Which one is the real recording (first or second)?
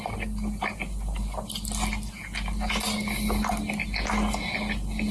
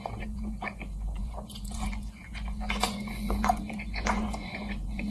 first